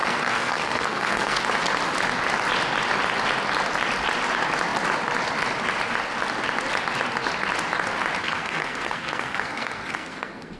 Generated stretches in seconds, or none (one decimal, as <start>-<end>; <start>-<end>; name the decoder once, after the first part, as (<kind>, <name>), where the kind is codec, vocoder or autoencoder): 0.0-1.4 (codec, SNAC); 8.2-10.6